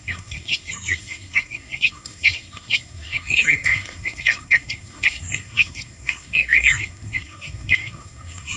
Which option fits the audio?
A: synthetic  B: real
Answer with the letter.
A